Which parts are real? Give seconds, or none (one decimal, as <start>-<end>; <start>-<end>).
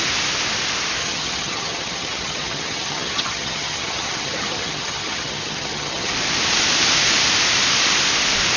0.0-1.0; 6.1-8.6